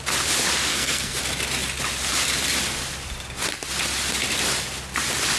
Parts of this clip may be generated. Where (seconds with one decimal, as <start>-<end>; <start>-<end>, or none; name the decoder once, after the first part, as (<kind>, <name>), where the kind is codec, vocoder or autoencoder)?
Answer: 0.7-1.2 (codec, SNAC)